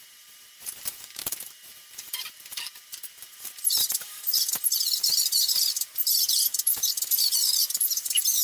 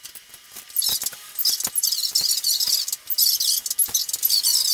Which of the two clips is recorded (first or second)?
second